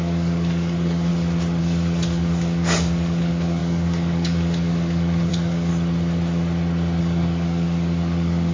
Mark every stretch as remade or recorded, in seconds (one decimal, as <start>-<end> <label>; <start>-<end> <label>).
0.0-1.1 remade; 1.1-1.6 recorded; 1.6-5.7 remade; 5.7-7.0 recorded; 7.0-8.5 remade